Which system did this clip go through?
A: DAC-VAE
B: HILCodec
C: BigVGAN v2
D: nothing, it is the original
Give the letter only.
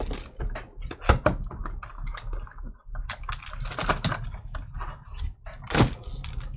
D